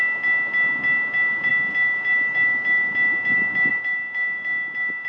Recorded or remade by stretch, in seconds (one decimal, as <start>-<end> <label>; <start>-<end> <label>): 0.0-5.1 recorded